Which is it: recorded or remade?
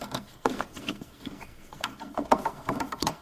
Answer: remade